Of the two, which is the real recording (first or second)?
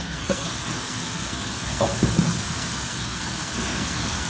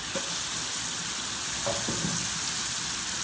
second